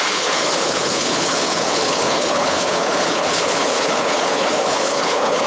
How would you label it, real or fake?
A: fake